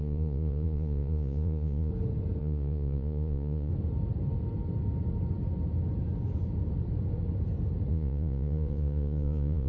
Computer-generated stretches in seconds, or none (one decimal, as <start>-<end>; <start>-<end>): 0.0-1.9; 2.4-3.7; 7.9-9.7